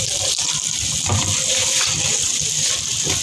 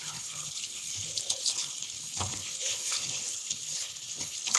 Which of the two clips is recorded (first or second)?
first